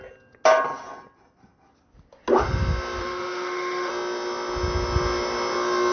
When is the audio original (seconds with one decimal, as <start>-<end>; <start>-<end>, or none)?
0.0-3.0; 3.9-5.9

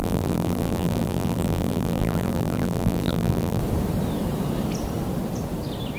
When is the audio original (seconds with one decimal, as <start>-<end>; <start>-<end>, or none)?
3.6-6.0

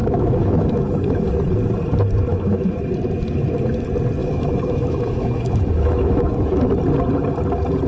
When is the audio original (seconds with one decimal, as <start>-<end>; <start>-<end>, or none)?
1.3-2.3; 2.9-4.2; 6.6-7.9

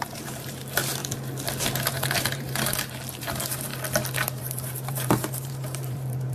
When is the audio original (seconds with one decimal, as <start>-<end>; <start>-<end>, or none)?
1.0-1.9; 3.7-4.4

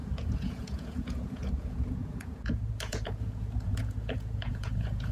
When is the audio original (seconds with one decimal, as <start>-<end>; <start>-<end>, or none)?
none

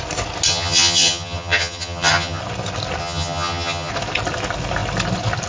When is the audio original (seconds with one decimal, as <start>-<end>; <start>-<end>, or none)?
0.0-0.5; 2.4-3.0; 3.9-5.5